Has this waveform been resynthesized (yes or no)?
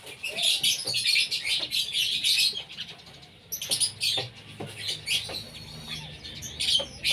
no